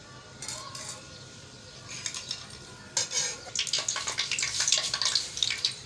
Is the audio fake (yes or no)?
no